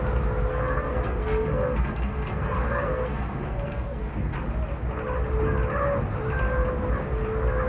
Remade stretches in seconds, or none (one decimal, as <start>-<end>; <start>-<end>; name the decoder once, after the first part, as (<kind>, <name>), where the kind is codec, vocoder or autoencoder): 0.5-4.1 (codec, SNAC)